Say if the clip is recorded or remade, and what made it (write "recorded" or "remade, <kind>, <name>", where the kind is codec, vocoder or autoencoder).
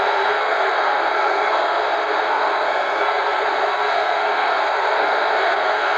remade, codec, SNAC